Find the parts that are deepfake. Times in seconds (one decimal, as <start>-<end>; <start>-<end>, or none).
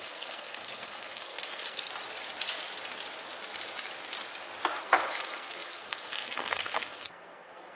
0.0-1.9; 4.8-7.8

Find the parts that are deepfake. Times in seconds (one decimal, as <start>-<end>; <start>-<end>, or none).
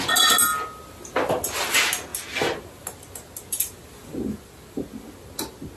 none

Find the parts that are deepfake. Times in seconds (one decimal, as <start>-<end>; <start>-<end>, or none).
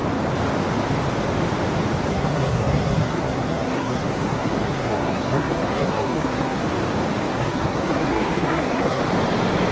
2.1-6.6; 7.3-9.0